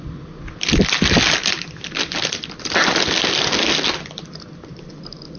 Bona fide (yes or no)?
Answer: yes